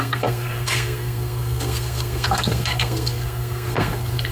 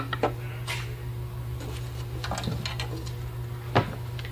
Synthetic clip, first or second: first